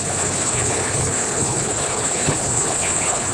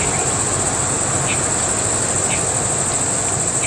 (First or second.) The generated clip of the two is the first